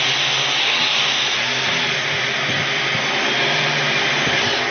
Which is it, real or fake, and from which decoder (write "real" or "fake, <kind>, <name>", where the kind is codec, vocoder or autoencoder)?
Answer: real